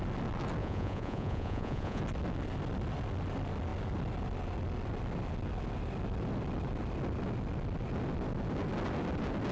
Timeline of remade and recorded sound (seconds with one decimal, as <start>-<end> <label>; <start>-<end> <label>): 0.0-0.6 recorded; 0.6-2.0 remade; 2.0-9.5 recorded